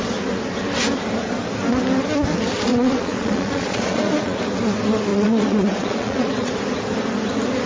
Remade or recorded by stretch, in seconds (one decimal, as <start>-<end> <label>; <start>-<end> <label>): 0.0-2.7 recorded; 2.7-4.4 remade; 4.4-5.1 recorded; 5.1-6.5 remade; 6.5-7.7 recorded